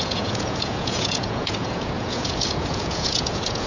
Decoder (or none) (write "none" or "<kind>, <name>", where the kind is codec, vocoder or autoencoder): vocoder, Vocos